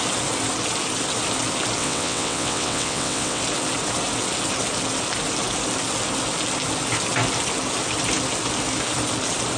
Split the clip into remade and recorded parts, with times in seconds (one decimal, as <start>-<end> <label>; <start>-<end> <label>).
0.0-1.8 recorded; 1.8-3.4 remade; 3.4-9.6 recorded